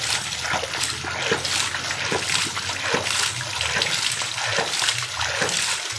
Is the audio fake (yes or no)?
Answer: no